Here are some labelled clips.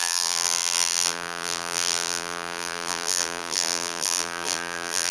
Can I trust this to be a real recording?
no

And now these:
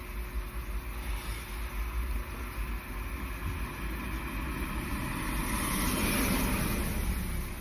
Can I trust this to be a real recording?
yes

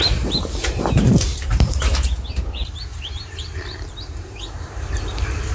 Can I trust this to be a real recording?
no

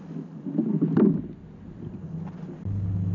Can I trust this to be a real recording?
yes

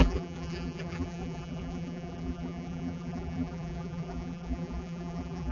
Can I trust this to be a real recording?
no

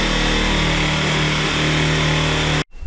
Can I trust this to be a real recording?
yes